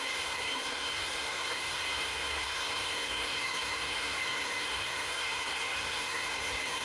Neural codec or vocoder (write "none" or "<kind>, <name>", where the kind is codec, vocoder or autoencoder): codec, SNAC